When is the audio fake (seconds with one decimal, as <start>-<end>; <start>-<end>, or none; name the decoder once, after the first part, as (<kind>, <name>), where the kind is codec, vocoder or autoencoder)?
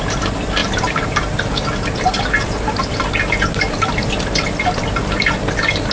0.6-4.1 (vocoder, BigVGAN v2)